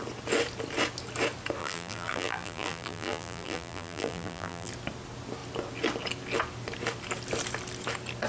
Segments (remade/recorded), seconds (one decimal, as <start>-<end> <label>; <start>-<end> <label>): 0.0-1.6 recorded; 1.6-4.7 remade; 4.7-8.3 recorded